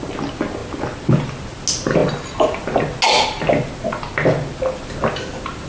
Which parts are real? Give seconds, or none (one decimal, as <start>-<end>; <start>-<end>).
0.0-5.7